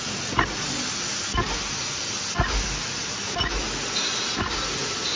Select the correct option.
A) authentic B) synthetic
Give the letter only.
A